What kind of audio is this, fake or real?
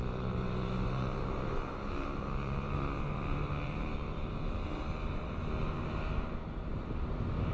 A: fake